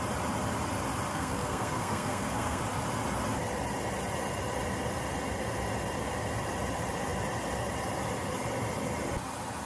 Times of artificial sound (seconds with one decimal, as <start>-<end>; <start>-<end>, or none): 1.1-2.6